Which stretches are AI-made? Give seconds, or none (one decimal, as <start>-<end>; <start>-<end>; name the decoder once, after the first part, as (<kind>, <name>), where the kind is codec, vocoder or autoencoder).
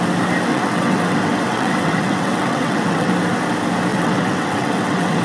0.5-3.1 (vocoder, WaveNeXt); 3.9-5.2